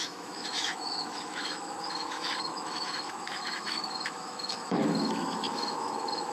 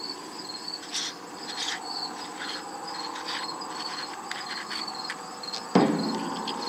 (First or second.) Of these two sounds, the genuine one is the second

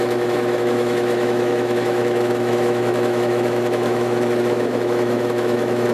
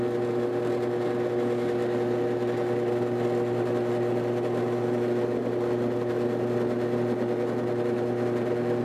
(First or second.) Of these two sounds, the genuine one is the second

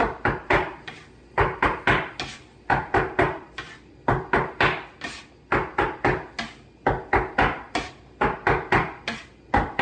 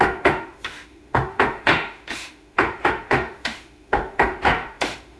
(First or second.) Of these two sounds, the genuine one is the first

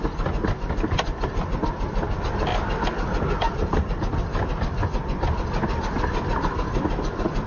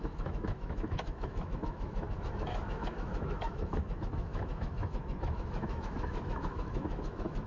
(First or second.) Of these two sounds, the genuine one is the first